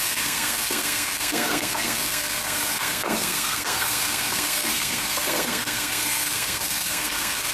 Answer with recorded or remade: remade